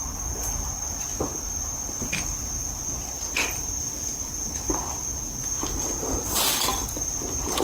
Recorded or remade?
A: recorded